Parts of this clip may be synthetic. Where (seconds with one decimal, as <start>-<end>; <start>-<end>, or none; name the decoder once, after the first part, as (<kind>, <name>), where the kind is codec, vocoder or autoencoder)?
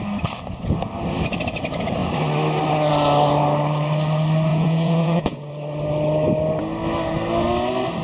4.5-5.5 (vocoder, Vocos)